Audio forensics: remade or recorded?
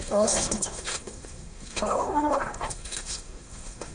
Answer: remade